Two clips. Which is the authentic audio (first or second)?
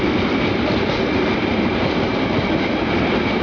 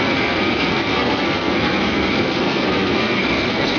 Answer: first